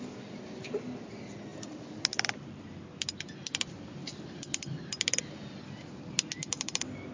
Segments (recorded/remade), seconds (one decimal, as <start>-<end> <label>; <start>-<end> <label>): 0.0-7.1 recorded